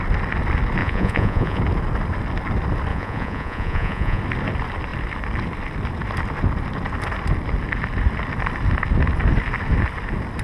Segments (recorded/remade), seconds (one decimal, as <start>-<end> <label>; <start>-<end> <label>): 0.0-0.8 recorded; 0.8-1.6 remade; 1.6-2.9 recorded; 2.9-4.2 remade; 4.2-10.4 recorded